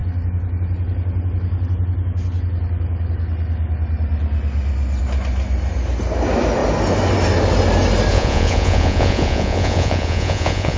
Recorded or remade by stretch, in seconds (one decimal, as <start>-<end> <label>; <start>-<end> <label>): 0.0-8.1 recorded; 8.1-10.8 remade